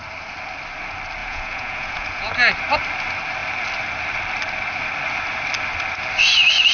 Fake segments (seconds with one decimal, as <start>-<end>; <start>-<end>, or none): 1.2-2.3